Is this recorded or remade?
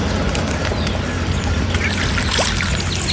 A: recorded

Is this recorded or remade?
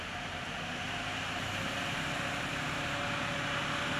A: recorded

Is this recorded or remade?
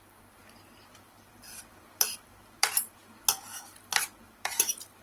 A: remade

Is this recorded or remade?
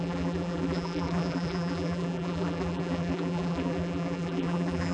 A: remade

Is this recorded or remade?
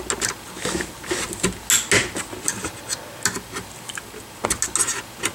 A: recorded